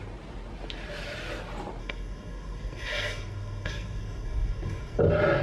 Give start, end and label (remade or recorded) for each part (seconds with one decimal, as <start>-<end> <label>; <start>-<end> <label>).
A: 0.0-1.8 recorded; 1.8-5.0 remade; 5.0-5.4 recorded